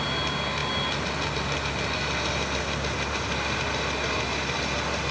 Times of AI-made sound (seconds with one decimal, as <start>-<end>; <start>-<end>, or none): none

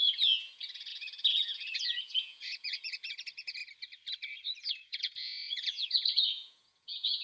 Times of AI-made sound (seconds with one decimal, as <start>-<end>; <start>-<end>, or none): 0.0-3.6; 4.7-7.2

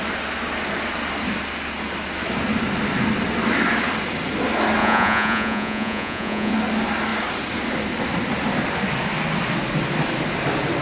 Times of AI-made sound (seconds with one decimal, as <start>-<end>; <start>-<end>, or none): 4.8-6.5

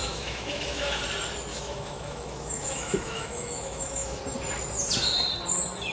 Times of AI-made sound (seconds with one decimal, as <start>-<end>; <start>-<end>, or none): 0.0-1.0; 1.5-4.2

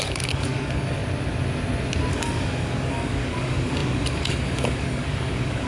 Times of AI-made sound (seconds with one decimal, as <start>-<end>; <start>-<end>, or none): 0.0-1.0; 2.1-5.7

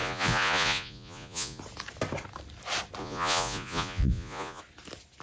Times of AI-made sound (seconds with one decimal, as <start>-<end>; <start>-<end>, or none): 0.0-1.6; 3.0-4.6